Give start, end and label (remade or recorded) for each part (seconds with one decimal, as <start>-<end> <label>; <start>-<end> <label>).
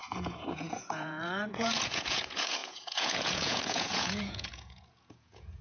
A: 0.0-5.6 remade